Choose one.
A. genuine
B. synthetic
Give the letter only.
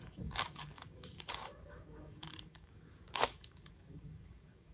B